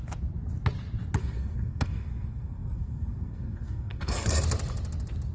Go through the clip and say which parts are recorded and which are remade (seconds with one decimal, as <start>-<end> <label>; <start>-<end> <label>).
0.0-1.2 recorded; 1.2-4.4 remade; 4.4-5.3 recorded